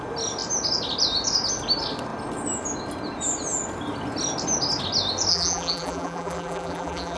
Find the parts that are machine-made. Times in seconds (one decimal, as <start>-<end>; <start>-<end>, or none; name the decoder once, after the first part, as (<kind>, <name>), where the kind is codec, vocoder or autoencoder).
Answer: 5.3-7.2 (vocoder, BigVGAN v2)